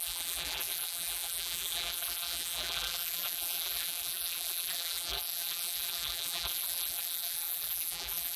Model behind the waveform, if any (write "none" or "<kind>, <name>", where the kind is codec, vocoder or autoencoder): vocoder, BigVGAN v2